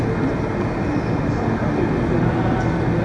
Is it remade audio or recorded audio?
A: recorded